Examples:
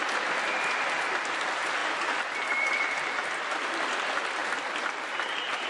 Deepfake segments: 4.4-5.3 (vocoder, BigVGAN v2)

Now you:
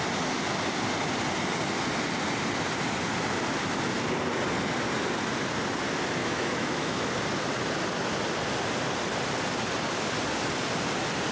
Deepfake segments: 6.2-7.1 (autoencoder, DAC-VAE)

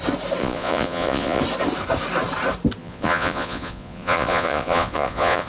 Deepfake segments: 0.4-1.4 (vocoder, Vocos); 2.8-5.5

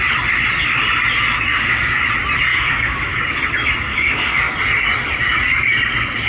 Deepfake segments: 1.5-2.1 (codec, DAC); 2.5-3.4; 3.9-4.4

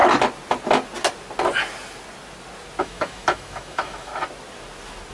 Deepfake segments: 2.8-4.1 (autoencoder, DAC-VAE)

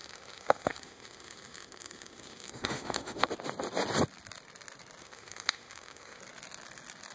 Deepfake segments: 0.0-3.3 (autoencoder, DAC-VAE); 5.0-6.2

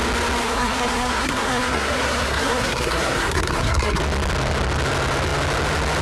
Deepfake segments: 0.4-4.0 (codec, SNAC)